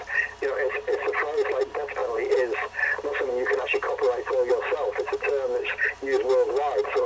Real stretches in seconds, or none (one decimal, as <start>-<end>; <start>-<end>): 0.0-7.1